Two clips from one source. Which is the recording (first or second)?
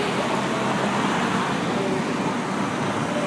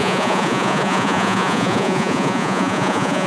first